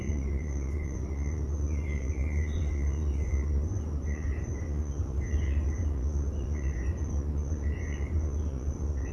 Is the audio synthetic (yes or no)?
yes